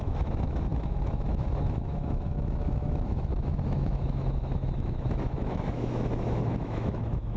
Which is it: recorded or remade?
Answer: remade